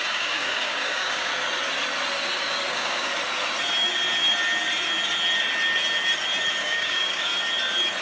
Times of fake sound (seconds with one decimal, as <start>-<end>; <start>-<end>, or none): 0.0-1.3; 2.7-3.1; 6.6-7.3